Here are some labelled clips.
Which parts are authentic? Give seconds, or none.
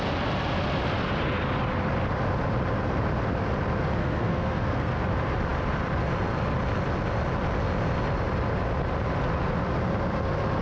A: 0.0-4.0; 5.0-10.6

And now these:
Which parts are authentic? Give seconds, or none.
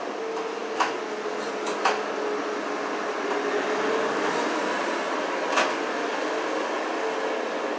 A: 0.0-7.8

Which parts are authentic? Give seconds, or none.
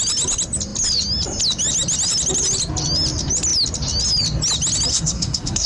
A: 0.0-4.9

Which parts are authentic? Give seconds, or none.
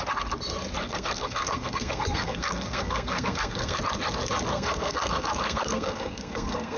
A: 0.0-0.8; 3.8-4.5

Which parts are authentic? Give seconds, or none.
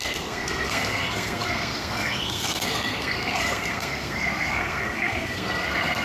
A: none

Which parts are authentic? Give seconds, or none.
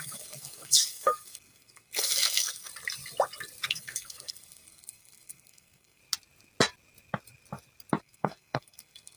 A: 2.7-3.7; 6.0-8.0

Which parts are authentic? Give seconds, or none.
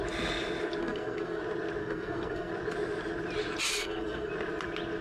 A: 0.0-0.8; 1.4-1.8; 2.5-3.7; 4.3-5.0